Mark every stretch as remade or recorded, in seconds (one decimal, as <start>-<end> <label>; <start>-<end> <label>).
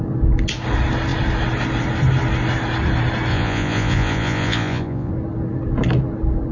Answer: 0.0-3.3 recorded; 3.3-5.1 remade; 5.1-6.5 recorded